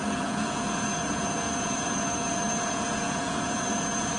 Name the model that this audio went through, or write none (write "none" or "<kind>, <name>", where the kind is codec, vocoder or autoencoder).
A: vocoder, Vocos